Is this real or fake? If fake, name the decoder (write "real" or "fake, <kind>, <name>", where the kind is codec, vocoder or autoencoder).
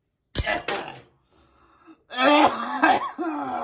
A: real